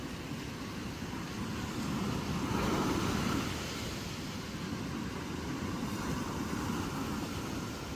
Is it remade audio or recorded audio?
recorded